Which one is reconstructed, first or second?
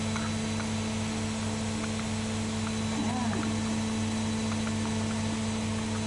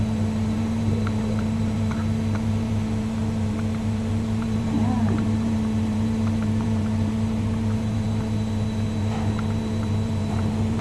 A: second